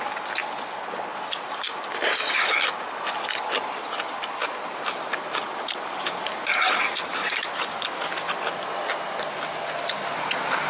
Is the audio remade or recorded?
recorded